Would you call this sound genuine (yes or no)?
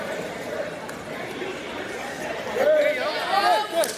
yes